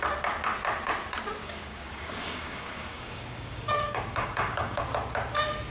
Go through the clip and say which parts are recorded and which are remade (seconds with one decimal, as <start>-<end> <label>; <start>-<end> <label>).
0.0-1.4 recorded; 1.4-4.8 remade; 4.8-5.7 recorded